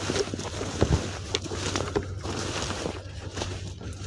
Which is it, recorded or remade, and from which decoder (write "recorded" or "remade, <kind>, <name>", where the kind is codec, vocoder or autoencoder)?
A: recorded